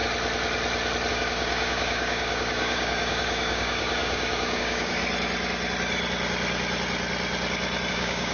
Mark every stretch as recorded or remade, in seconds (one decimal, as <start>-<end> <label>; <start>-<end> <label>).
0.0-1.1 recorded; 1.1-5.0 remade; 5.0-7.9 recorded; 7.9-8.3 remade